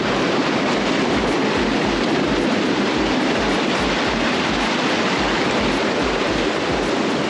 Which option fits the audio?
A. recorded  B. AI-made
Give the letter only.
A